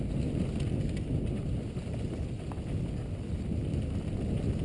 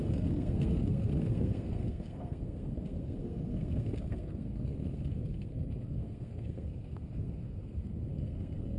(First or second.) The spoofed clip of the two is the second